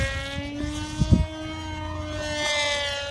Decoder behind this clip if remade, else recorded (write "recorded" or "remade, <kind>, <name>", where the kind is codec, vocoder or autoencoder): recorded